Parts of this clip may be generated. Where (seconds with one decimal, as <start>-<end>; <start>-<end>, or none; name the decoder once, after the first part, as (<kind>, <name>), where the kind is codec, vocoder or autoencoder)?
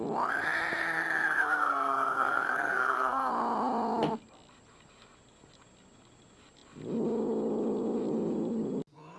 0.8-3.3 (codec, SNAC)